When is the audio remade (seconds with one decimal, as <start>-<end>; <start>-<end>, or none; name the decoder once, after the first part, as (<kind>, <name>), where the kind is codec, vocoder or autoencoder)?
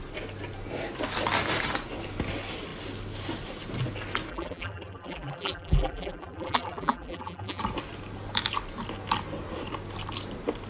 4.3-7.6 (vocoder, BigVGAN v2)